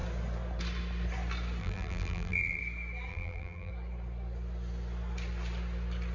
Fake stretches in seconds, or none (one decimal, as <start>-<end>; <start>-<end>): 1.6-2.6; 3.1-3.7